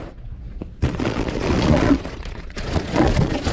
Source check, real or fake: fake